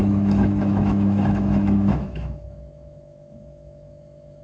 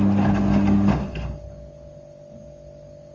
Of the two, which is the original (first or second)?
second